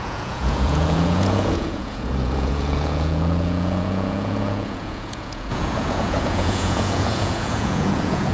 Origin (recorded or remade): remade